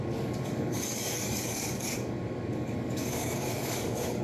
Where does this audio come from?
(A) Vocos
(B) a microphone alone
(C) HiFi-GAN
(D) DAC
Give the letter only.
D